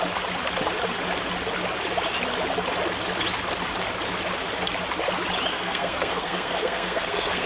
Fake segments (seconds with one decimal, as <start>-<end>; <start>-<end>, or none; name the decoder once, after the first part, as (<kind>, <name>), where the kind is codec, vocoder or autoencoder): 5.5-7.5 (codec, SNAC)